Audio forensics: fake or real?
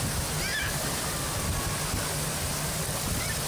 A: real